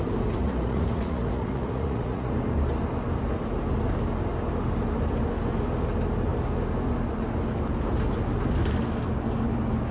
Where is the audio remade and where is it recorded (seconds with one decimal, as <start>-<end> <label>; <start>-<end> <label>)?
0.0-0.4 recorded; 0.4-2.3 remade; 2.3-9.9 recorded